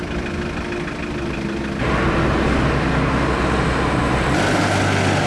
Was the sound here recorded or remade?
recorded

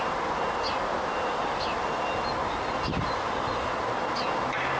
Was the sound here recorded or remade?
recorded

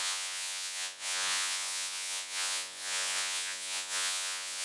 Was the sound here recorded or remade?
remade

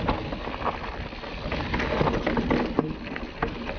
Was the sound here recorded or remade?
recorded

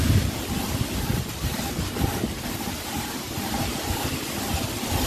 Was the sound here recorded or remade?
recorded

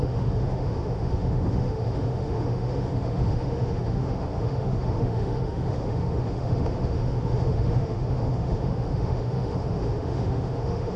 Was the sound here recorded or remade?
remade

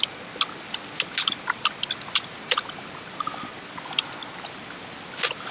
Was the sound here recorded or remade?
recorded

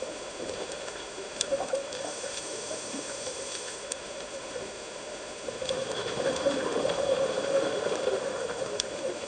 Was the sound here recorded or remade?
remade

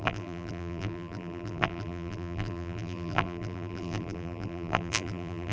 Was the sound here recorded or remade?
remade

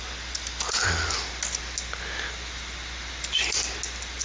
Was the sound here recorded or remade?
recorded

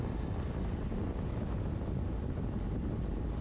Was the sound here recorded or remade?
recorded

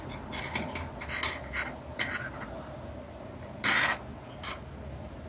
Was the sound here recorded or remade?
recorded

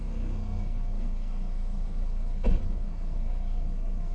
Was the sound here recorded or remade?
remade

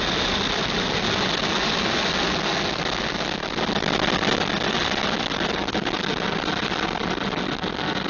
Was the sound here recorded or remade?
recorded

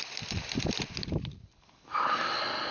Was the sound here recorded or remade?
recorded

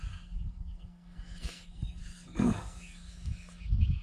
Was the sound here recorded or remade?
remade